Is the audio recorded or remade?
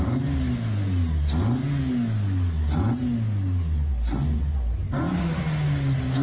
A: recorded